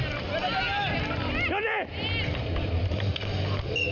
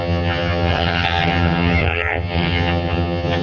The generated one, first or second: second